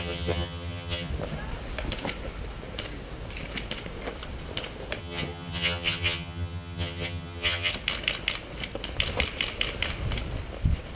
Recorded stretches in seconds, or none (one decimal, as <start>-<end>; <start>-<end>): 1.1-5.0; 7.7-11.0